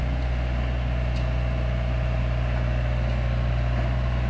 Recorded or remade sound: recorded